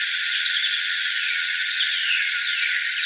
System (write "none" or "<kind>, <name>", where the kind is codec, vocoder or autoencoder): vocoder, Vocos